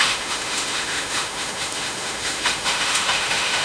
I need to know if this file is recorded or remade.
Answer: remade